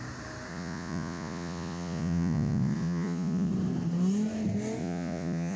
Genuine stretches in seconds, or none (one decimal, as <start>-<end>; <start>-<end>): 0.0-0.5; 3.5-4.8